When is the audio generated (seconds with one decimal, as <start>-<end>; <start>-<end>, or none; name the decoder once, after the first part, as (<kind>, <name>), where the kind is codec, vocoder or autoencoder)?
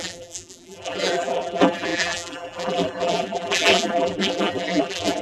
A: 0.0-5.2 (vocoder, BigVGAN v2)